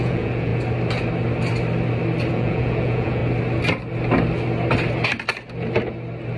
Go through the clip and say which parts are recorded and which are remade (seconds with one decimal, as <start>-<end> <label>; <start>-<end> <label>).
0.0-0.5 remade; 0.5-2.3 recorded; 2.3-3.2 remade; 3.2-6.4 recorded